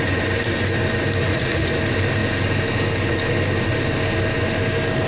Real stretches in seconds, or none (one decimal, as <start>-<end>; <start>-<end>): 0.0-1.2; 1.7-5.1